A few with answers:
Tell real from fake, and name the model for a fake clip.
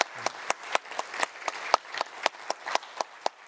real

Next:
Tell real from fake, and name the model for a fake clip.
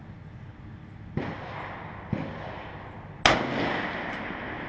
real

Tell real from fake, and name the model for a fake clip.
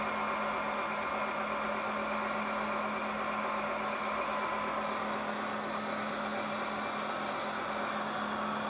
real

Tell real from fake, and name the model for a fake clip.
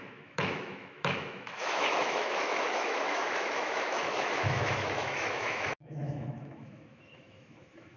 fake, autoencoder, DAC-VAE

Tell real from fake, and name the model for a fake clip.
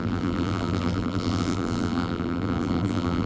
fake, vocoder, BigVGAN v2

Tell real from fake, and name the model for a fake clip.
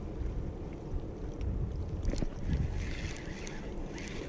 real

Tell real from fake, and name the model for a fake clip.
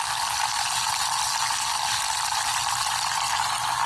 real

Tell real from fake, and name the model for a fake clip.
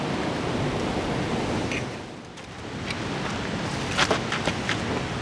real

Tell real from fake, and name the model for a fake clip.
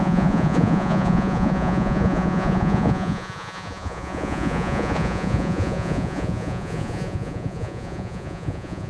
fake, vocoder, Vocos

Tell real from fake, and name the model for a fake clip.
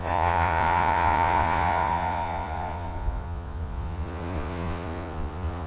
fake, vocoder, Vocos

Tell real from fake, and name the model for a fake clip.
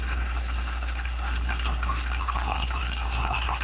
fake, codec, SNAC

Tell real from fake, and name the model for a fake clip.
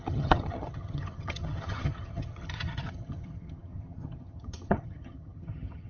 fake, vocoder, HiFi-GAN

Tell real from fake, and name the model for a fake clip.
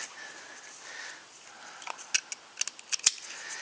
real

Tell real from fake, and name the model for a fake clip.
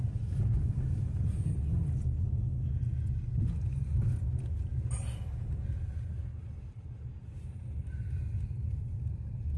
real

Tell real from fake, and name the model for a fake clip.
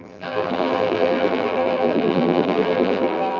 fake, vocoder, BigVGAN v2